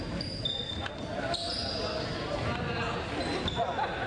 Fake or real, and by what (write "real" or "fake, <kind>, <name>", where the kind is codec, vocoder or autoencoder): real